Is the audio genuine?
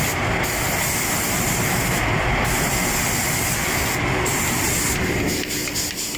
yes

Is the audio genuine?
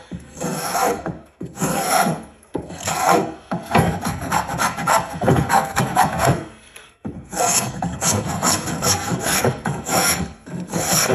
no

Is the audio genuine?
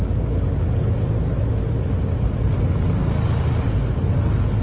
yes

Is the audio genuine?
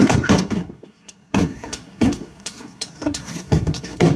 no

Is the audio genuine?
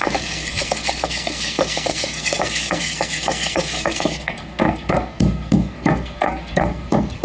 no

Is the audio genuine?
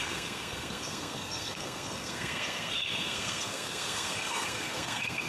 no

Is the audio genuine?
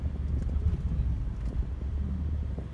yes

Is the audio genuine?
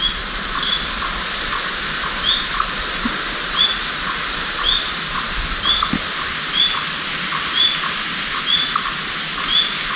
yes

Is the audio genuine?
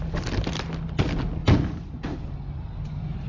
yes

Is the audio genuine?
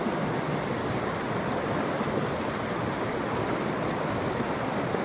yes